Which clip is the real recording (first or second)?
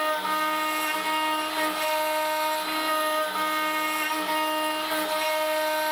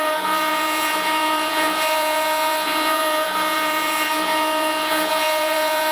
first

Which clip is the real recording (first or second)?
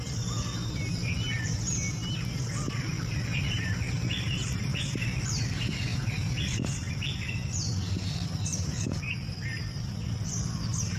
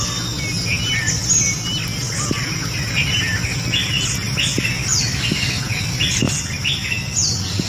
second